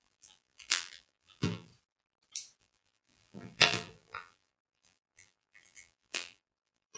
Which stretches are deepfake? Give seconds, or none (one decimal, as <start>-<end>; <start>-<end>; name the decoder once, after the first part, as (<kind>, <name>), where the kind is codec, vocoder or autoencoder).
0.0-1.7 (vocoder, BigVGAN v2); 2.6-7.0